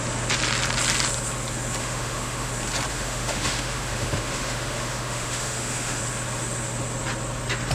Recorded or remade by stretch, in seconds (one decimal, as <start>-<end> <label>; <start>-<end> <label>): 0.0-1.8 recorded; 1.8-2.5 remade; 2.5-2.9 recorded; 2.9-6.0 remade; 6.0-7.7 recorded